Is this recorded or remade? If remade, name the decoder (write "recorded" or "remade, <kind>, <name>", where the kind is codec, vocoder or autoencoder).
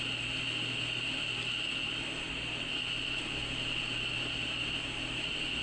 recorded